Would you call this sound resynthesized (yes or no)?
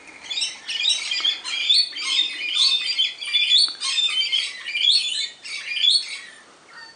no